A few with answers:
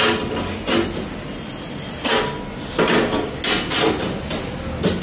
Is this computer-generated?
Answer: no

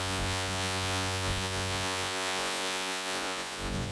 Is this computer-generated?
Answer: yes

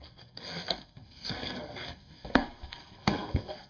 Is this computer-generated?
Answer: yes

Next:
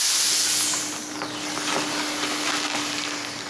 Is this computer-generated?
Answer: no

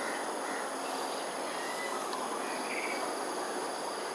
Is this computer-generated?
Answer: no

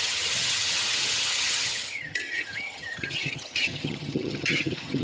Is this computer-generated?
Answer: yes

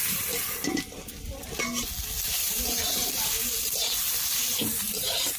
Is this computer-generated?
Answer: no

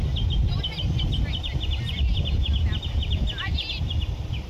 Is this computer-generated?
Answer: no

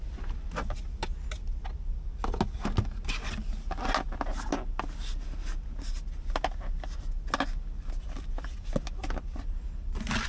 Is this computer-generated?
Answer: no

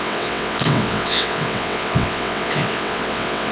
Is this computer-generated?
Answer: yes